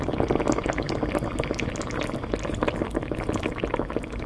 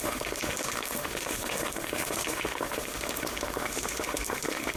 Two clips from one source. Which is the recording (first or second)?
first